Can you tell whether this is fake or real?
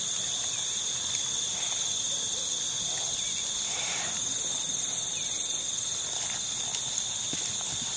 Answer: real